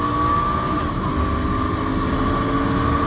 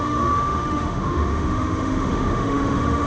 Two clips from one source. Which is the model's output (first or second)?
second